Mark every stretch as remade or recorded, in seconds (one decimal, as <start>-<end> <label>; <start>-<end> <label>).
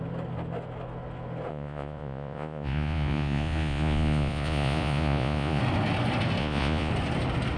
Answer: 0.0-1.5 recorded; 1.5-5.6 remade; 5.6-6.4 recorded; 6.4-6.9 remade; 6.9-7.6 recorded